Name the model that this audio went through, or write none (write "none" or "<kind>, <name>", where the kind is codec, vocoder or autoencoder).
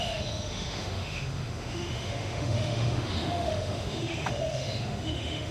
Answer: autoencoder, DAC-VAE